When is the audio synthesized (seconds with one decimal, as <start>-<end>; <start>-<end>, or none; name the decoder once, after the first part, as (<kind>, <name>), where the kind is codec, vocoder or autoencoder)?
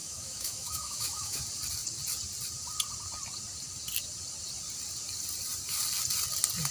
0.0-1.4 (autoencoder, DAC-VAE)